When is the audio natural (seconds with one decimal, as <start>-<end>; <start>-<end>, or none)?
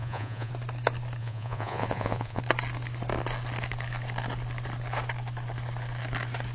0.5-1.2; 2.4-6.5